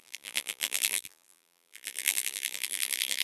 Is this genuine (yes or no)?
no